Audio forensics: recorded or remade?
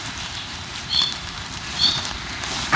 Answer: remade